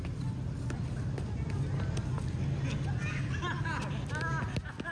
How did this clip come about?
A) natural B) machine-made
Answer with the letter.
A